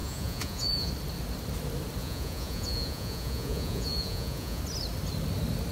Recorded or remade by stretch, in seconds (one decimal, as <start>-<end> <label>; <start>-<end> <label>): 0.0-0.9 remade; 0.9-2.0 recorded; 2.0-4.6 remade; 4.6-5.7 recorded